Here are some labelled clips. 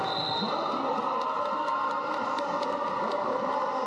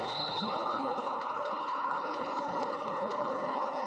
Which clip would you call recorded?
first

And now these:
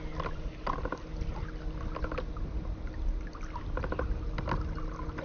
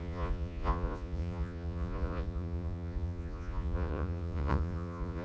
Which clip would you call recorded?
first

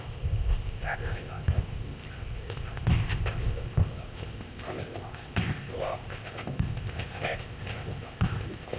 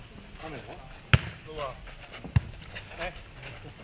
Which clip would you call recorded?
second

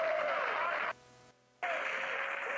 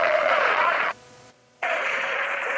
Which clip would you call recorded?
first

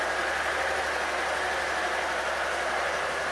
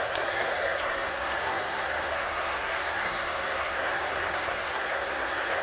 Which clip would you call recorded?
first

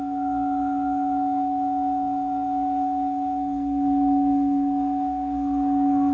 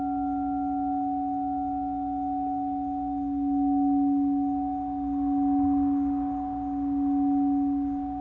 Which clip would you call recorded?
second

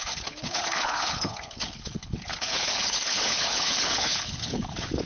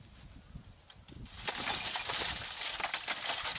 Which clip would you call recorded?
second